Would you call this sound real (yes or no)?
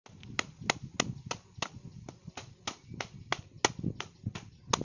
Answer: yes